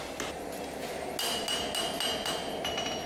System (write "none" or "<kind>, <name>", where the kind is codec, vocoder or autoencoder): none